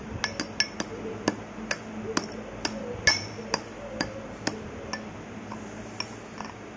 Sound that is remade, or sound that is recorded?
recorded